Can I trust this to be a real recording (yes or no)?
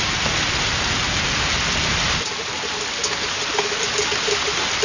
yes